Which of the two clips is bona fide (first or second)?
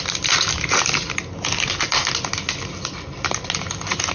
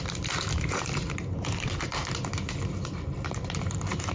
first